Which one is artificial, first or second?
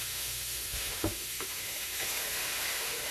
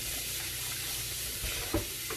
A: first